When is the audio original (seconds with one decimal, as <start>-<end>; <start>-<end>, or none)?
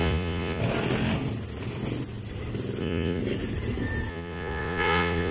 0.6-2.8; 3.2-4.1